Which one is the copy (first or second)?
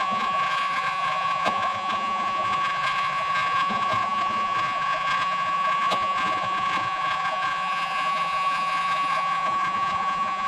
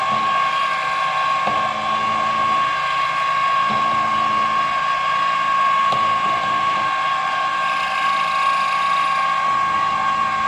first